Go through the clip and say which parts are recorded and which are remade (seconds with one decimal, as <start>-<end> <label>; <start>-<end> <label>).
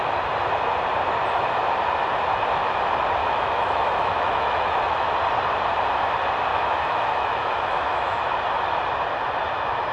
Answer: 0.0-3.2 recorded; 3.2-5.1 remade; 5.1-6.5 recorded; 6.5-8.2 remade; 8.2-9.9 recorded